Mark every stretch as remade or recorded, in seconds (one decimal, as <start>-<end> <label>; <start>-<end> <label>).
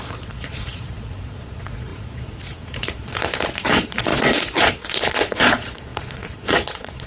0.0-7.1 remade